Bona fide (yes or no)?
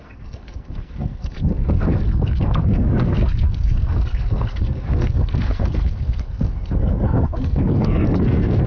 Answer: no